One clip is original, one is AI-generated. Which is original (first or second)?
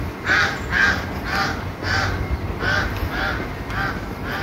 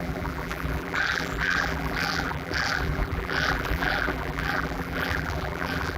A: first